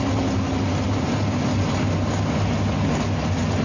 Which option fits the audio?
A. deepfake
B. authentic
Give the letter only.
B